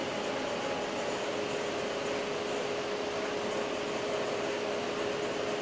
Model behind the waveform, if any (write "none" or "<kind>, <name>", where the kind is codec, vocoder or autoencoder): none